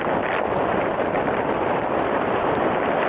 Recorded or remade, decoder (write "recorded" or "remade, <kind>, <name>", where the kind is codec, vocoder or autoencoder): remade, vocoder, BigVGAN v2